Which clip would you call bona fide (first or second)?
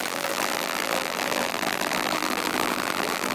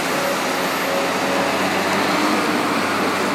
second